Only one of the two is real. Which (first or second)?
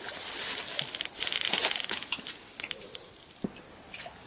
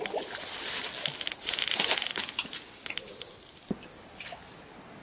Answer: second